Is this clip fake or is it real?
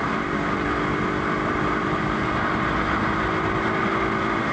real